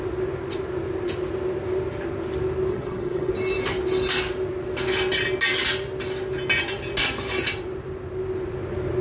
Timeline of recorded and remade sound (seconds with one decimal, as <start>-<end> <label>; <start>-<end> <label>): 0.0-2.7 recorded; 2.7-3.3 remade; 3.3-9.0 recorded